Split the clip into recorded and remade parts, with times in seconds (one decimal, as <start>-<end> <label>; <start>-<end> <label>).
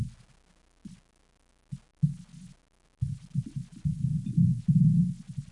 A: 0.0-5.5 recorded